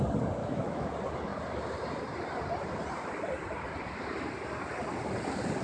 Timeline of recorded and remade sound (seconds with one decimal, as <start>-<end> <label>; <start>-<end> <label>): 0.0-0.4 recorded; 0.4-0.9 remade; 0.9-5.6 recorded